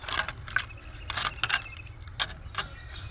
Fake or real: real